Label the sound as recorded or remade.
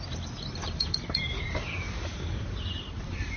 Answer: remade